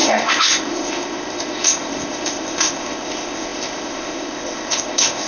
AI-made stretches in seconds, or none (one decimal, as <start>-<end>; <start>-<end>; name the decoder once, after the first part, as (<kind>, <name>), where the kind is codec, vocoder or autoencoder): 0.0-5.3 (codec, ZipCodec)